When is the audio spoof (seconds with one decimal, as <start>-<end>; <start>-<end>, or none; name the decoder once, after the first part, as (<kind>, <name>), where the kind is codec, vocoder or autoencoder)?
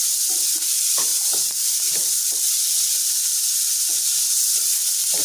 none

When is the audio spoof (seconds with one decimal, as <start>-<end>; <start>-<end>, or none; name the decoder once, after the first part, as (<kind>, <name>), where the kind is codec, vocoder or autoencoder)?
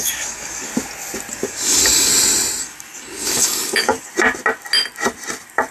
0.0-0.7 (codec, DAC); 1.3-2.1; 2.6-4.1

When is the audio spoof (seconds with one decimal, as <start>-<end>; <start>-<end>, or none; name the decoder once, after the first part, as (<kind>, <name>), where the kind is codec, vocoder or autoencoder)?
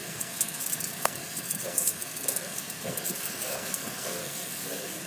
0.0-5.1 (codec, SNAC)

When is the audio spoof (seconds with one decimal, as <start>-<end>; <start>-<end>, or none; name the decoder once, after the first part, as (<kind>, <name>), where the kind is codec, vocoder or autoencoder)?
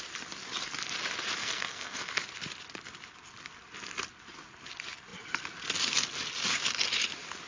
1.4-2.1 (codec, SNAC)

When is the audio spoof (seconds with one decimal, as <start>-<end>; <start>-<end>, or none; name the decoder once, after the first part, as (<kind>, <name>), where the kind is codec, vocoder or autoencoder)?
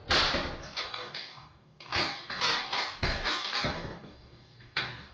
0.6-5.1 (codec, DAC)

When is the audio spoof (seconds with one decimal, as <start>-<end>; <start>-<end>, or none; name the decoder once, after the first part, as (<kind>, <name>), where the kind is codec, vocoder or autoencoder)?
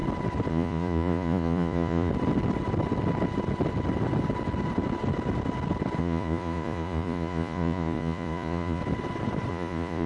0.5-2.1 (vocoder, Vocos); 6.0-8.8; 9.5-10.1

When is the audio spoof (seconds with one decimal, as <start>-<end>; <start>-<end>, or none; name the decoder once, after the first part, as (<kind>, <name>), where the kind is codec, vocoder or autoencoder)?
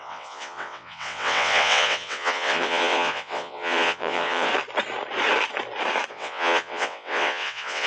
0.0-4.5 (vocoder, WaveNeXt); 6.1-7.9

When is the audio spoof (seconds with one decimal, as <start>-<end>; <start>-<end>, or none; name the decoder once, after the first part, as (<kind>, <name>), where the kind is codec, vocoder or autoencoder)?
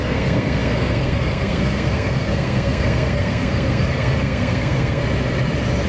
0.0-5.0 (codec, SNAC)